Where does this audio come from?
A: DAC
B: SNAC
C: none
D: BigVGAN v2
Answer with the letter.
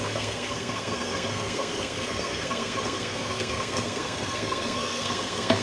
B